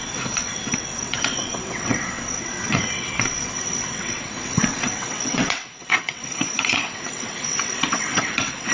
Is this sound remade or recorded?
remade